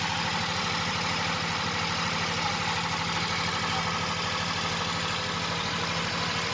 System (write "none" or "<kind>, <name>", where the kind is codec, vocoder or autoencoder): none